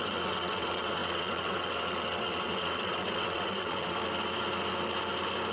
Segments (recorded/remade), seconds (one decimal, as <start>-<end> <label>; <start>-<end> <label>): 0.0-4.0 remade; 4.0-5.5 recorded

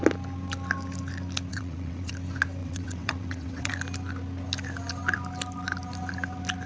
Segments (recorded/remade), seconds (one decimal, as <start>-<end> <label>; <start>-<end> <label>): 0.0-1.5 recorded; 1.5-2.1 remade; 2.1-2.6 recorded; 2.6-3.7 remade; 3.7-6.7 recorded

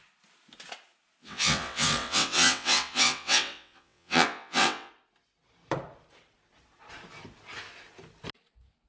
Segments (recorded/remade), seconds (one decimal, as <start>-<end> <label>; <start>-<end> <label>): 0.0-1.2 recorded; 1.2-4.9 remade; 4.9-8.9 recorded